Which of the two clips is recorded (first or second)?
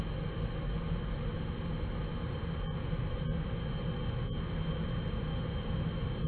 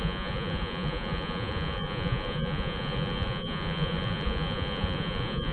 first